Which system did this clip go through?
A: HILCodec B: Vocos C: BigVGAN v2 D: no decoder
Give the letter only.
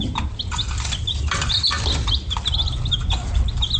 D